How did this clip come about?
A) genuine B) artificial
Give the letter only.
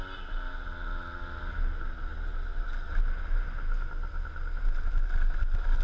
A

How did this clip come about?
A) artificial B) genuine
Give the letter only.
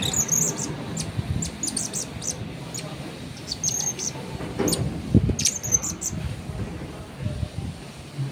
B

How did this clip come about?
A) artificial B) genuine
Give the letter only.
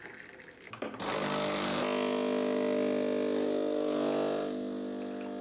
B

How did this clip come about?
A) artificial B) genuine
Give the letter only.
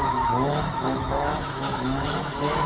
A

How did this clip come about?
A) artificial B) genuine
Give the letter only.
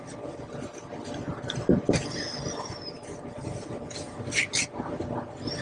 B